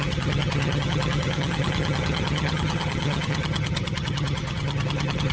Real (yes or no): no